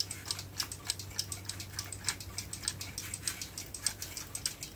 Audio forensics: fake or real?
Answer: real